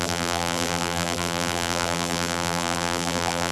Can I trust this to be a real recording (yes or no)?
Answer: no